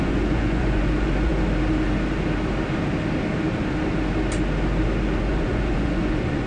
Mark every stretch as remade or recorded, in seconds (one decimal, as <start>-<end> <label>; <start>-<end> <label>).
0.0-1.3 remade; 1.3-5.2 recorded; 5.2-6.5 remade